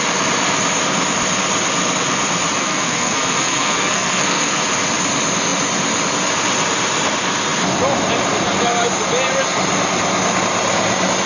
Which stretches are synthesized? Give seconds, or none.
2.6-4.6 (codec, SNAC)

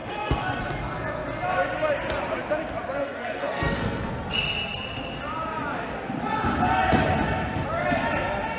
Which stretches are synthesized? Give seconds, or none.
0.0-0.6 (codec, SNAC); 3.0-4.1